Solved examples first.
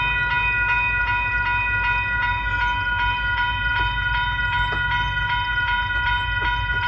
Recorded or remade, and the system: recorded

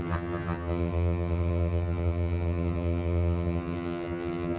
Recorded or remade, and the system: remade, vocoder, HiFi-GAN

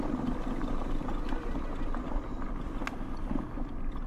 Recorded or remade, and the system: recorded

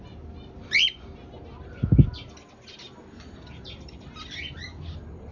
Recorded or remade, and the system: recorded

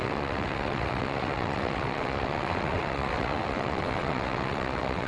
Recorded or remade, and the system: remade, vocoder, WaveNeXt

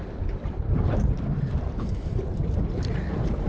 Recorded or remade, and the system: remade, vocoder, BigVGAN v2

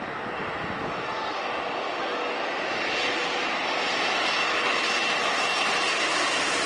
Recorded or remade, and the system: recorded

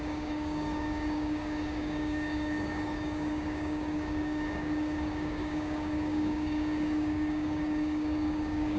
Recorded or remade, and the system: remade, codec, DAC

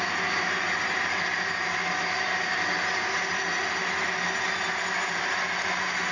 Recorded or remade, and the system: recorded